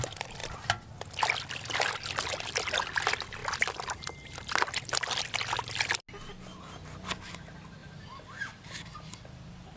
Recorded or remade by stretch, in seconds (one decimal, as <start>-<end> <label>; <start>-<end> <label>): 0.0-9.8 recorded